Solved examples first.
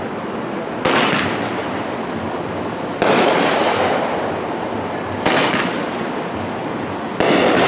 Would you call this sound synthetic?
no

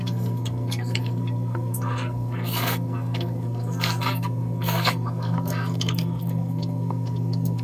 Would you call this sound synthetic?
yes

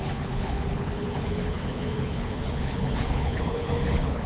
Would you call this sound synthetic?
yes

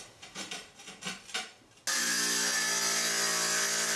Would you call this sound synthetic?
no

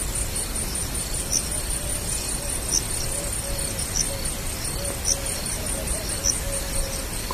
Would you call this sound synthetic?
no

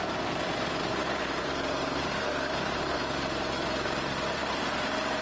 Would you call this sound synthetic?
yes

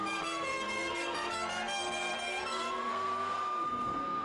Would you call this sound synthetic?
yes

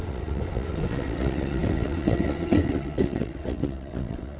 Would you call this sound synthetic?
yes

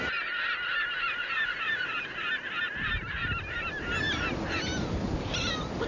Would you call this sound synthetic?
no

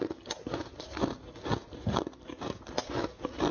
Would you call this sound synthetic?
no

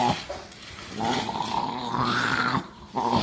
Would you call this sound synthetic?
no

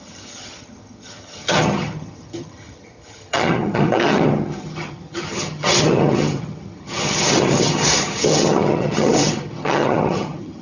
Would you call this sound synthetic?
yes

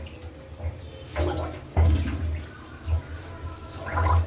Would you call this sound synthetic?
no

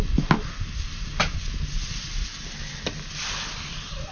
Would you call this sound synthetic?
no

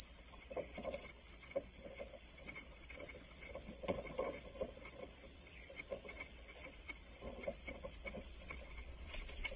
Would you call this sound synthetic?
yes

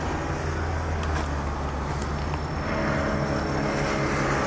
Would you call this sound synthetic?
no